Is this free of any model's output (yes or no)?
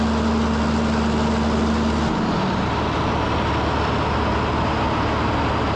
yes